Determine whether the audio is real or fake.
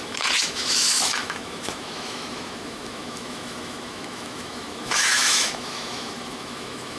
fake